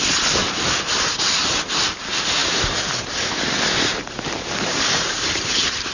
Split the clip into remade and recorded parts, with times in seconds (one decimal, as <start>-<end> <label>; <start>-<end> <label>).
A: 0.0-0.4 remade; 0.4-1.2 recorded; 1.2-5.9 remade